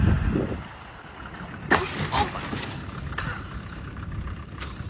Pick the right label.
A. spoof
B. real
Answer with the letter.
B